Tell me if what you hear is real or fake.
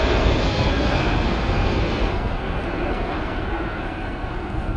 fake